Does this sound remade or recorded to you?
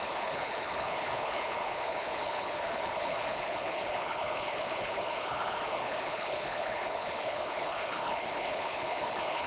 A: remade